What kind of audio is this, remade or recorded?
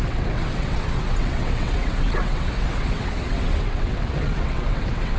remade